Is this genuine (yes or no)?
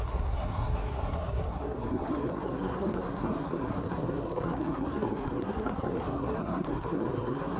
no